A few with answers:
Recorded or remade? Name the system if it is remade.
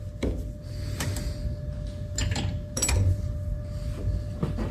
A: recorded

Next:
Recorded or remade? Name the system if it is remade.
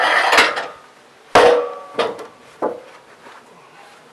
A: recorded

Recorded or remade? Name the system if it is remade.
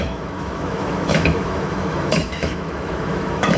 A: remade, autoencoder, DAC-VAE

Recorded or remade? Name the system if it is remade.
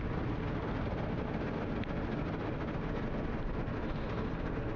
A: recorded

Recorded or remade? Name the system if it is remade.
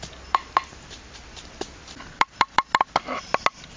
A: recorded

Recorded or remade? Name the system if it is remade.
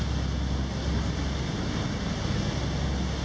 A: recorded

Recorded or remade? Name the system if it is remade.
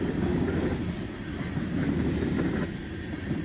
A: recorded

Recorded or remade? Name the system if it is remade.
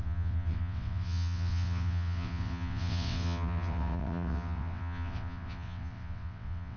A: remade, vocoder, WaveNeXt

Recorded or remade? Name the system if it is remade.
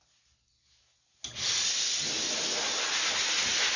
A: recorded